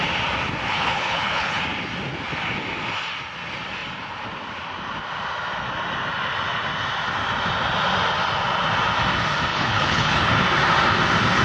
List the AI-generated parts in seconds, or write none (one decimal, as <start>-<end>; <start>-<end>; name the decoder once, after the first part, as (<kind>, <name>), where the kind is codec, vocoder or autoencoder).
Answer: 0.7-1.6 (codec, HILCodec); 9.5-10.3